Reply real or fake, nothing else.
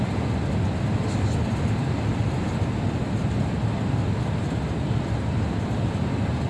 real